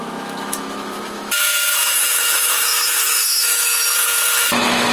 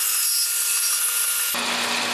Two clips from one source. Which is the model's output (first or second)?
first